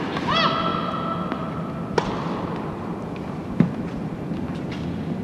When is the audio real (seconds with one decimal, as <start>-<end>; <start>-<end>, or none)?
0.0-5.2